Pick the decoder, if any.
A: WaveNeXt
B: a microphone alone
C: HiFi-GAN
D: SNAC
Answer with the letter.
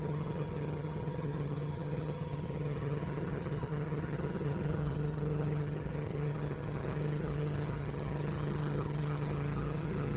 C